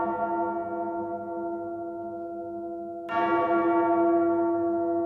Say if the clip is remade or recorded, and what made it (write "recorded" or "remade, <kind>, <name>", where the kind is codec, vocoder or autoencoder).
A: recorded